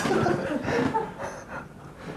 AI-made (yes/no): no